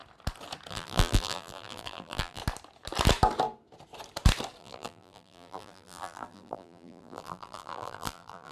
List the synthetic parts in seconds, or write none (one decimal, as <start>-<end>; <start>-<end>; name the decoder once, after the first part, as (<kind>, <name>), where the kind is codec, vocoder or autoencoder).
0.7-2.4 (vocoder, BigVGAN v2); 4.6-8.5